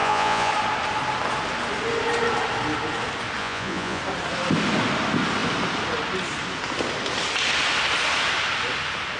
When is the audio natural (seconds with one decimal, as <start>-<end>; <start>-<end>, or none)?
0.5-3.4; 4.0-9.2